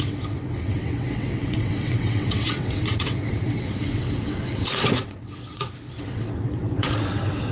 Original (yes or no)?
no